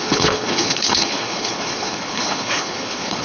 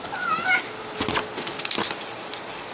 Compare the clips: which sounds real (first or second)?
second